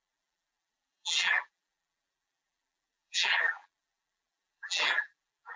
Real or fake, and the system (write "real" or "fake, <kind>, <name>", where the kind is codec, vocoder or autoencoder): fake, vocoder, BigVGAN v2